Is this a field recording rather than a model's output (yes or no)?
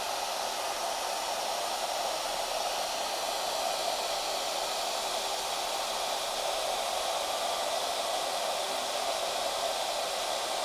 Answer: yes